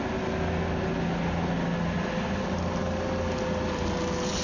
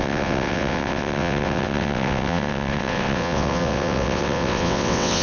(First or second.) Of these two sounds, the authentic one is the first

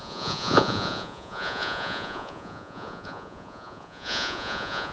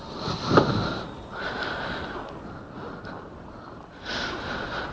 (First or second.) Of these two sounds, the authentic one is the second